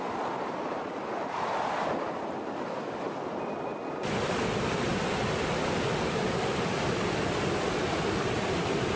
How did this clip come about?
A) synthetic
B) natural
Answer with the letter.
B